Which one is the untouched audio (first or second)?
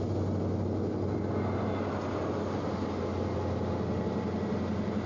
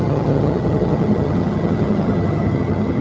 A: first